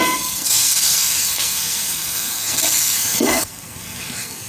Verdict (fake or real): fake